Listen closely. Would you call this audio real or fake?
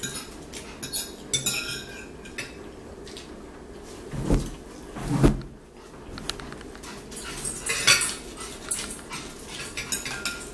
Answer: real